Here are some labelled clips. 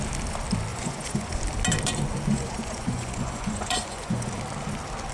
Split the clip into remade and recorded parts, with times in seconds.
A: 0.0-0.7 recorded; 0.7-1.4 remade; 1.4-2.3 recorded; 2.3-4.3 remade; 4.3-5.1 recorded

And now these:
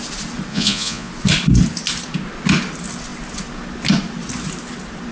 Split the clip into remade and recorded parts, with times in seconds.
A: 0.0-0.5 recorded; 0.5-1.1 remade; 1.1-5.1 recorded